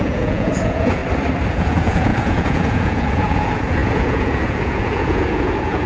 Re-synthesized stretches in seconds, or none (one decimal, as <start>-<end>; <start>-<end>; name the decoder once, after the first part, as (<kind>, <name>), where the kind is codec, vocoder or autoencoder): 0.0-1.0 (vocoder, Vocos); 1.5-5.9